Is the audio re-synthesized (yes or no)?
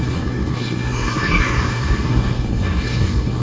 yes